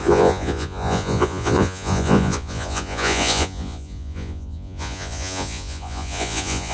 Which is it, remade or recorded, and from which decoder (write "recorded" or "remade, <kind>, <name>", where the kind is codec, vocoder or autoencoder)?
remade, vocoder, Vocos